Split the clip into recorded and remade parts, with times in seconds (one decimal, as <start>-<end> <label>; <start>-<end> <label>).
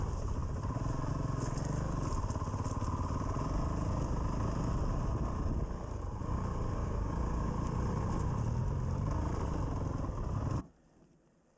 0.0-6.8 recorded; 6.8-7.5 remade; 7.5-11.6 recorded